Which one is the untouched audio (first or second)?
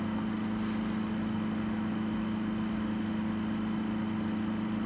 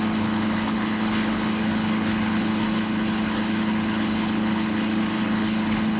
first